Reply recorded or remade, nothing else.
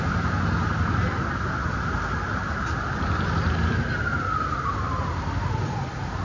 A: recorded